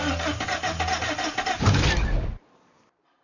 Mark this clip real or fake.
real